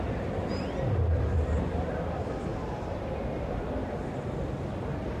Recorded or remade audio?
recorded